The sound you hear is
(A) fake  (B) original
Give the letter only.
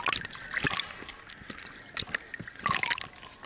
B